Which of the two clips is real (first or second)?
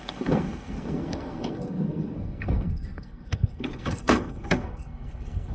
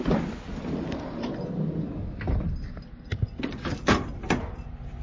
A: second